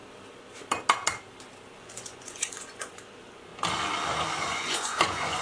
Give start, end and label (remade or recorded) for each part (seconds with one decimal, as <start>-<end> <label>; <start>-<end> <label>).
0.0-1.8 recorded; 1.8-3.5 remade; 3.5-4.4 recorded; 4.4-5.4 remade